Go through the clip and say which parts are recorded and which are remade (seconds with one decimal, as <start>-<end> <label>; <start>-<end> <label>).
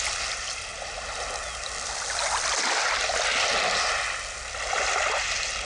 0.0-5.6 recorded